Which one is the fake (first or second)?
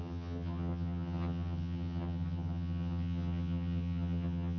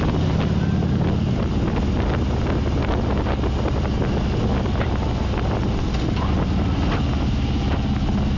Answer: first